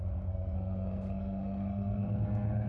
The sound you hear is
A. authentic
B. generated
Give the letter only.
B